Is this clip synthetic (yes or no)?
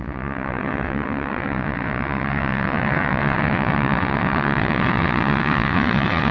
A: yes